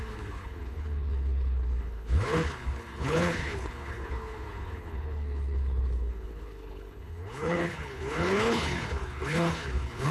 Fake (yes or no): yes